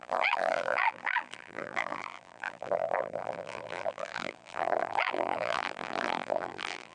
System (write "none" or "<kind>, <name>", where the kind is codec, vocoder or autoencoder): vocoder, BigVGAN v2